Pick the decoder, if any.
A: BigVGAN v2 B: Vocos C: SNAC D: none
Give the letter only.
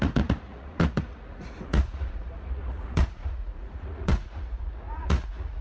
B